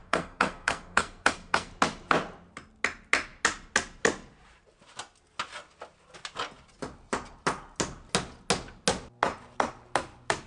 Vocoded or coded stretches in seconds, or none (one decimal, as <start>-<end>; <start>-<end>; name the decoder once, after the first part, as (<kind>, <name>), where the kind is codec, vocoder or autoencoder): 0.0-1.7 (codec, SNAC)